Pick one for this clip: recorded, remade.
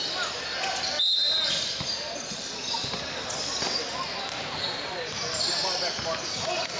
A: recorded